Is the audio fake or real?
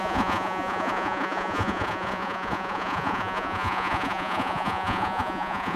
fake